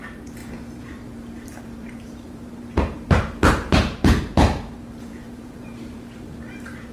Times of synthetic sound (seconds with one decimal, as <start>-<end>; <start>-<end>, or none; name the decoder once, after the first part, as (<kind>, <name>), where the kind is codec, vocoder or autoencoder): 0.0-6.9 (vocoder, BigVGAN v2)